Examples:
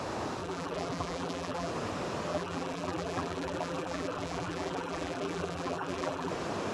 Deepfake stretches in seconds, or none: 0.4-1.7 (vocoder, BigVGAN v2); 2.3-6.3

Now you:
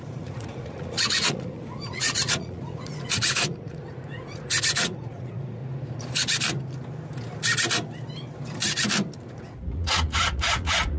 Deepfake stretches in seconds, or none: 0.0-5.6 (vocoder, Vocos); 9.3-11.0

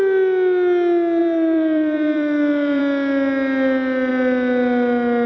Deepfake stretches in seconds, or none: 1.2-2.8 (vocoder, BigVGAN v2)

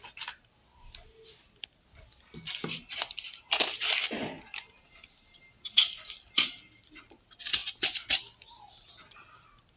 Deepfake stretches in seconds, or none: none